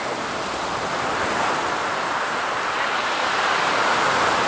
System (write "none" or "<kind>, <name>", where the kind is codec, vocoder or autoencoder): none